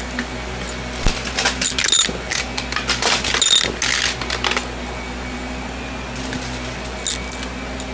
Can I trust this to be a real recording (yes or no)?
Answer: yes